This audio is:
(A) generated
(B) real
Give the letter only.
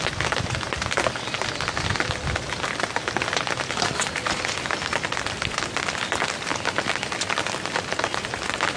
B